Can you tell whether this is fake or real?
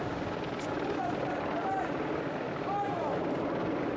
real